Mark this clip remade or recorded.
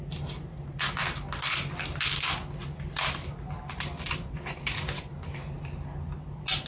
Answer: recorded